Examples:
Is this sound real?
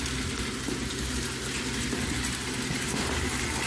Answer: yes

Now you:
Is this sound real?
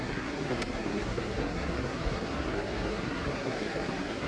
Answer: no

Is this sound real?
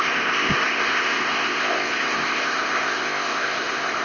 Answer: no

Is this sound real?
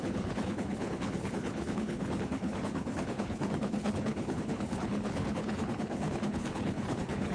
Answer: no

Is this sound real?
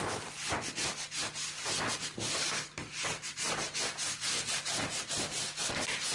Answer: yes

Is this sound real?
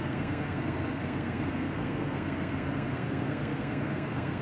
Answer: no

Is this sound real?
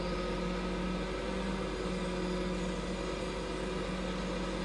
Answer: yes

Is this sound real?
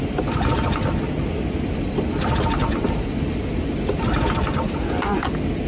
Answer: yes